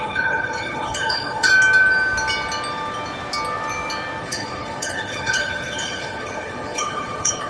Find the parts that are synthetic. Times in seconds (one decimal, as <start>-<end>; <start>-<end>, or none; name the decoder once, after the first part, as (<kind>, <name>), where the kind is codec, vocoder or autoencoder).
0.0-1.5 (codec, HILCodec); 4.2-7.5